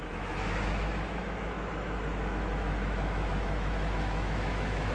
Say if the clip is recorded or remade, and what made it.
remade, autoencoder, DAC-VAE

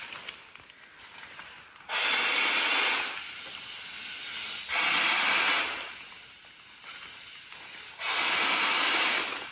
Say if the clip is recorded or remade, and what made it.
recorded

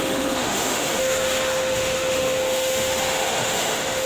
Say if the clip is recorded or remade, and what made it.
remade, autoencoder, DAC-VAE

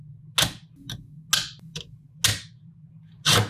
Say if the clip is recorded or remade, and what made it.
recorded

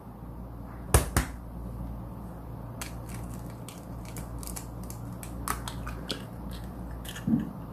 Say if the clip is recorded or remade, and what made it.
recorded